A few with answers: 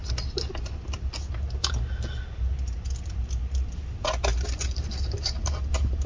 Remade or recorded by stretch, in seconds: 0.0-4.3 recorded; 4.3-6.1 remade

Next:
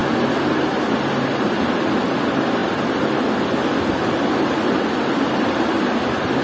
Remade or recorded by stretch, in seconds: 0.0-6.4 recorded

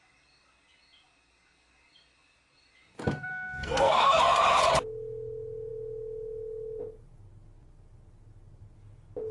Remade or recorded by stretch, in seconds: 0.0-3.3 recorded; 3.3-4.2 remade; 4.2-9.3 recorded

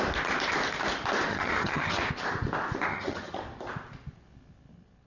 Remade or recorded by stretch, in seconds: 0.0-1.3 recorded; 1.3-2.0 remade; 2.0-2.9 recorded; 2.9-3.4 remade; 3.4-5.1 recorded